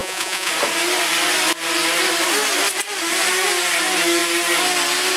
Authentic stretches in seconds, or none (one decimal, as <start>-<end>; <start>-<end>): 0.5-5.2